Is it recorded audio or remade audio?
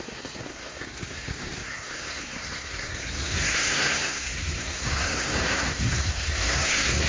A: remade